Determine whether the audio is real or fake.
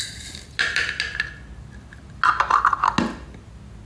real